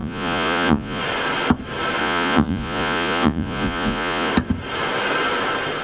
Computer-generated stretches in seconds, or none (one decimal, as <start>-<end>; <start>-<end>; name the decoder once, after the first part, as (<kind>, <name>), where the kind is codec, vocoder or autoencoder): 0.0-1.0 (vocoder, Vocos); 2.0-4.3